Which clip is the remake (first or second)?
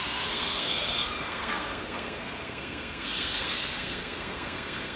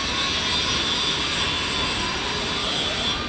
first